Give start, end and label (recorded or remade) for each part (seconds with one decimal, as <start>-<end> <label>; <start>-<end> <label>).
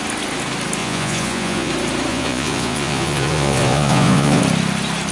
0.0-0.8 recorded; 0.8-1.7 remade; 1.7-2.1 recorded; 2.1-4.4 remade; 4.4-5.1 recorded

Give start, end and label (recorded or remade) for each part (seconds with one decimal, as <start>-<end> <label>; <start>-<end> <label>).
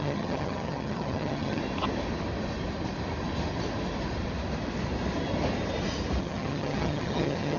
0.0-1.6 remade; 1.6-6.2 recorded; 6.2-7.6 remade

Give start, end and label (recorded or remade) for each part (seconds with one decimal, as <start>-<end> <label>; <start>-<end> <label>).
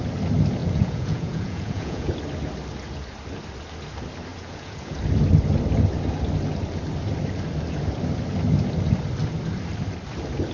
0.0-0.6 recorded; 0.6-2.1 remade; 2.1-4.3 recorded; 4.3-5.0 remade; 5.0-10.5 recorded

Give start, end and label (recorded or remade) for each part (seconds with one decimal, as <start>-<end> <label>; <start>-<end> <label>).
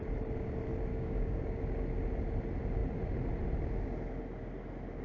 0.0-0.9 recorded; 0.9-1.6 remade; 1.6-5.0 recorded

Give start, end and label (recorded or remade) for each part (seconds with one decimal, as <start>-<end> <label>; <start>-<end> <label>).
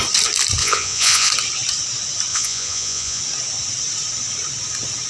0.0-0.6 recorded; 0.6-1.3 remade; 1.3-2.3 recorded; 2.3-3.2 remade; 3.2-5.1 recorded